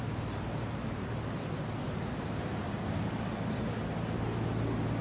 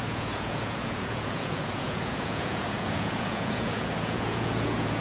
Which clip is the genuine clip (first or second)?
first